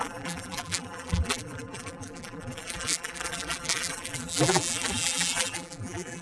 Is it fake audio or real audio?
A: fake